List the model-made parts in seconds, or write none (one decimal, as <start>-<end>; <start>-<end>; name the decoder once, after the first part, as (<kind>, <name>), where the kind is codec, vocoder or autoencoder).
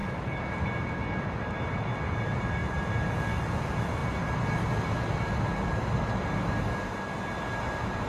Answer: none